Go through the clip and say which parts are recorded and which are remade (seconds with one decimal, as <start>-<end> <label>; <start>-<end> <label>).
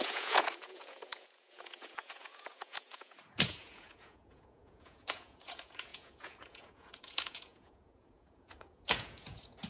0.0-9.7 remade